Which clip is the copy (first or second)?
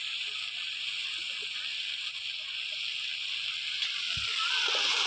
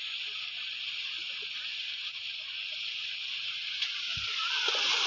second